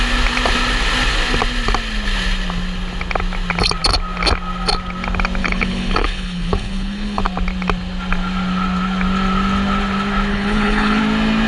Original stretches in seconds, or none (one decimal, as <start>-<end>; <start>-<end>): 0.0-5.4; 7.2-10.3; 11.0-11.5